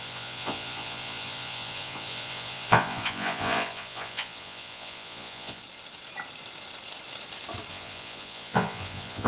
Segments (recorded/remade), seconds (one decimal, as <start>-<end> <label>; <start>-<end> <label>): 0.0-5.6 remade; 5.6-7.7 recorded; 7.7-9.3 remade